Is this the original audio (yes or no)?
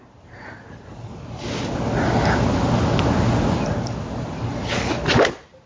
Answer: yes